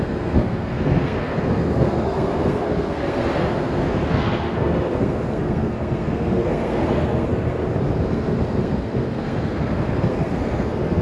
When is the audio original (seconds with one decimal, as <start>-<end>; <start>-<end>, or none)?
7.6-8.1